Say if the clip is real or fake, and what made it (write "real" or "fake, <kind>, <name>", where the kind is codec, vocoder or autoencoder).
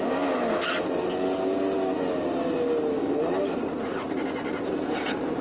real